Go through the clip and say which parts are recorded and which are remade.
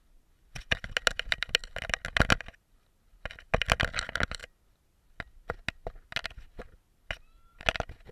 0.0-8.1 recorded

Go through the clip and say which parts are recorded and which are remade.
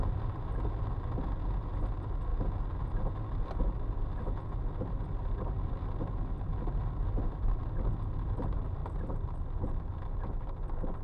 0.0-11.0 recorded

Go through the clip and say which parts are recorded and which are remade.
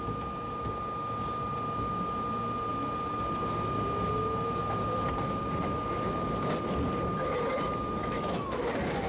0.0-8.0 recorded; 8.0-8.7 remade; 8.7-9.1 recorded